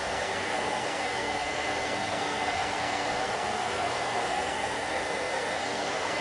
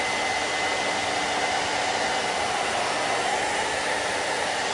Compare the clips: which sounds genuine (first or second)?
second